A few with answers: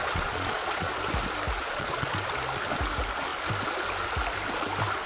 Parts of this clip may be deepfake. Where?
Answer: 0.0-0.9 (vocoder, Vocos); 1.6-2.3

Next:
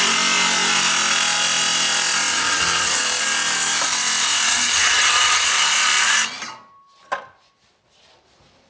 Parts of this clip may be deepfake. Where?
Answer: 2.3-3.0 (vocoder, HiFi-GAN); 4.5-5.5

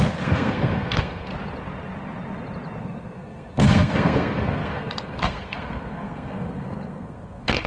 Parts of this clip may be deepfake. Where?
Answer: 0.0-1.3 (codec, SNAC); 2.8-7.7

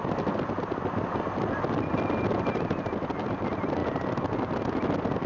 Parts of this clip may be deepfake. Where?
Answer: none

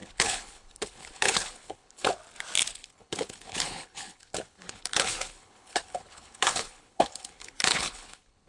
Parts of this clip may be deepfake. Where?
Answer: 0.0-2.2 (codec, HILCodec); 2.7-8.5

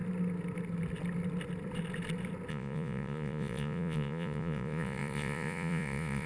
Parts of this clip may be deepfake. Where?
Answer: 2.5-6.3 (vocoder, Vocos)

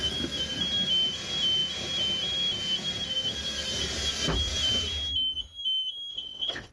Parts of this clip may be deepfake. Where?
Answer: 6.1-6.7 (vocoder, WaveNeXt)